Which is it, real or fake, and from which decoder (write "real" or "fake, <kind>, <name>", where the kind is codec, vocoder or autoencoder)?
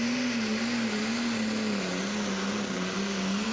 real